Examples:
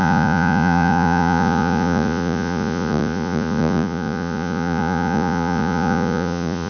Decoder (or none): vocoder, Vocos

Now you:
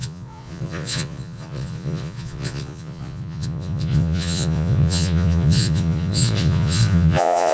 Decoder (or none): vocoder, Vocos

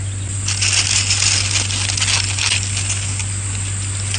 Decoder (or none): none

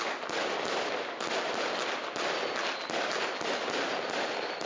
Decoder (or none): none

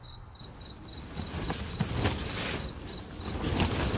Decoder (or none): none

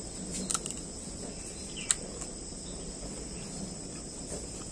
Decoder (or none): none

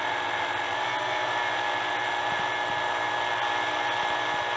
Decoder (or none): none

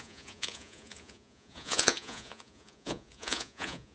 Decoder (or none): vocoder, Vocos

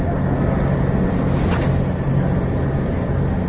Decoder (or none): none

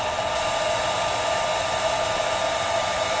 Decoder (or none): none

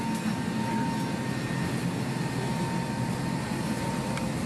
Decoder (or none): none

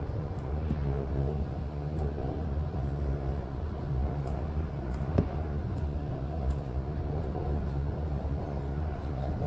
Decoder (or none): vocoder, Vocos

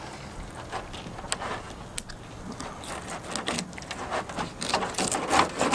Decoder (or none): none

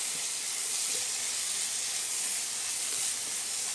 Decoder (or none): none